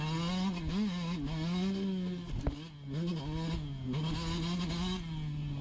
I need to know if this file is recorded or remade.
recorded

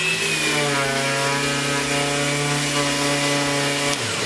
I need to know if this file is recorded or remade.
recorded